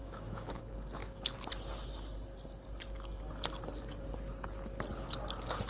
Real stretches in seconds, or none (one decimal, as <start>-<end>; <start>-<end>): 0.6-5.7